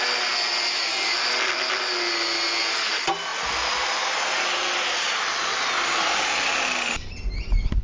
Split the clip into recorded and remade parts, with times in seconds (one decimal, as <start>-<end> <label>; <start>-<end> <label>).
0.0-7.8 recorded